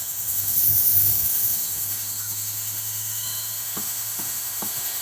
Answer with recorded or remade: remade